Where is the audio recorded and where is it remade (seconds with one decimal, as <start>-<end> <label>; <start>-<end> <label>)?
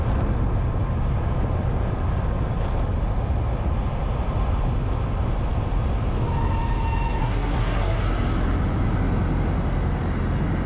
0.0-7.2 recorded; 7.2-8.0 remade; 8.0-10.7 recorded